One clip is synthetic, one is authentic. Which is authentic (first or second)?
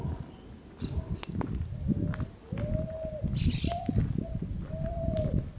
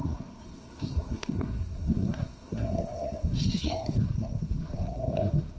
first